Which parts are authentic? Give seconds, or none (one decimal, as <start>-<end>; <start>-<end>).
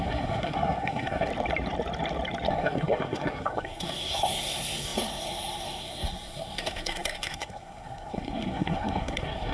1.3-2.5